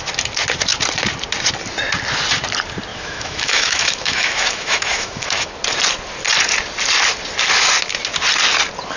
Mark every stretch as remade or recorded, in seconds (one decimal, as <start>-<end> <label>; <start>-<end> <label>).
0.0-2.9 recorded; 2.9-5.5 remade; 5.5-9.0 recorded